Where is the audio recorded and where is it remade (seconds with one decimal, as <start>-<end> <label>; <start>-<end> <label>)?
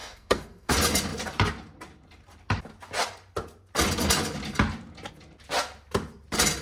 0.0-0.7 remade; 0.7-6.6 recorded